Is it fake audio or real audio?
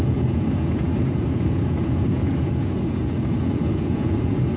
fake